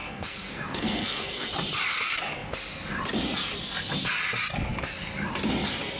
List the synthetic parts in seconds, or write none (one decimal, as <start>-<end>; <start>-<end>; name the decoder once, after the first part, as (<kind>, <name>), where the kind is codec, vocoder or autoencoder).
0.0-1.5 (codec, SNAC)

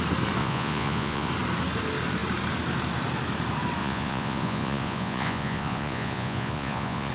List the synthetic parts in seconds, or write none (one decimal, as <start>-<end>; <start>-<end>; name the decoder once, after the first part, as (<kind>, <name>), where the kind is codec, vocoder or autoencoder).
0.4-1.3 (vocoder, Vocos); 3.8-7.1

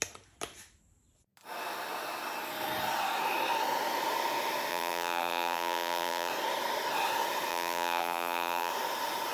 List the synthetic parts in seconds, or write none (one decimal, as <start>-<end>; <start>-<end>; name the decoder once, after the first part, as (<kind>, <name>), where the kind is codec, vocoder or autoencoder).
4.7-6.3 (vocoder, BigVGAN v2); 7.5-8.7

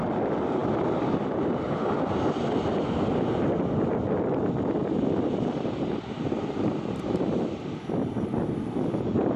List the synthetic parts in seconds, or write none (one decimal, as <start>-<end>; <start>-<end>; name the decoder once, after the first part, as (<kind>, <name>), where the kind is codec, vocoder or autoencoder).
0.6-2.1 (vocoder, BigVGAN v2); 4.8-7.4

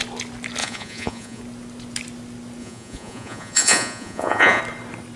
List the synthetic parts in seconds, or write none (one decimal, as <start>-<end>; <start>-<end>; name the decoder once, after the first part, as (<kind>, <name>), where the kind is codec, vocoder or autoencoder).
0.6-1.4 (vocoder, Vocos); 2.6-4.6

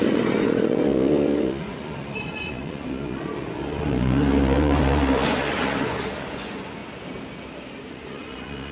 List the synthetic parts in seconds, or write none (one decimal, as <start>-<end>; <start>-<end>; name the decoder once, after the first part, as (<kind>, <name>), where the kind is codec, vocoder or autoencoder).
0.0-6.8 (vocoder, Vocos); 7.8-8.7

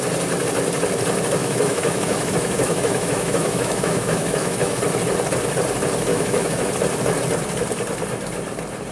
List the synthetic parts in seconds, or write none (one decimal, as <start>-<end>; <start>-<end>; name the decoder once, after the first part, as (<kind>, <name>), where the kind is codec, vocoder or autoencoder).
1.4-4.8 (autoencoder, DAC-VAE); 6.1-6.7

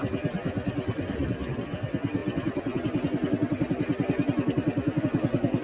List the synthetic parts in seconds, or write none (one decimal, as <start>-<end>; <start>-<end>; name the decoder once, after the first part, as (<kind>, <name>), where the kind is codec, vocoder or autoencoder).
none